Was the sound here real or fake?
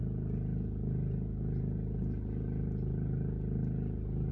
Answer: real